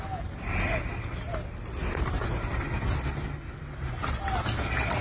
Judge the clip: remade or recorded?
recorded